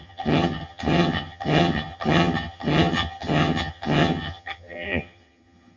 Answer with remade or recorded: remade